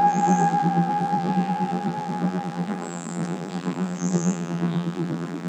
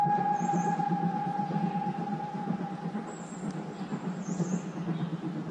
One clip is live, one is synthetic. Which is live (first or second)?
second